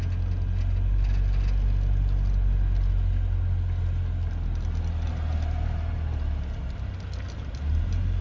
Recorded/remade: recorded